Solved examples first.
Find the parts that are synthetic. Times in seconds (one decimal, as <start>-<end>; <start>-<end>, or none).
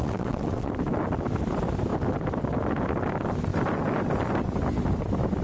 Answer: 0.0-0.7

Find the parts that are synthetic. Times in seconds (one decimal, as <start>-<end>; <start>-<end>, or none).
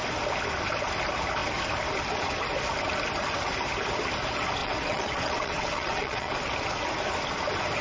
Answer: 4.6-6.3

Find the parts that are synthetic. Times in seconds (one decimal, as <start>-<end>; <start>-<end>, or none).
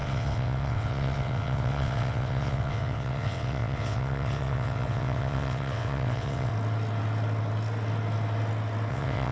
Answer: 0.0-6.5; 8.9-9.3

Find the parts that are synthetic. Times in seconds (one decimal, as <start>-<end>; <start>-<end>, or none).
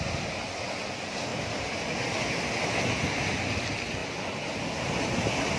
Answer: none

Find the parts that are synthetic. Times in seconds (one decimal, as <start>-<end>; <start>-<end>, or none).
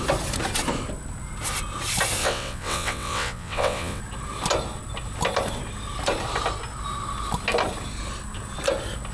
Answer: 2.2-4.0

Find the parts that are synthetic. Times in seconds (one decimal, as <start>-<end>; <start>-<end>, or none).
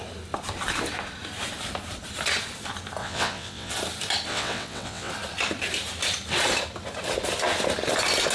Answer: 3.0-3.7; 4.3-5.1